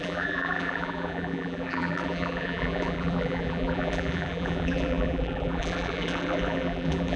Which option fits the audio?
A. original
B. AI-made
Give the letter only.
B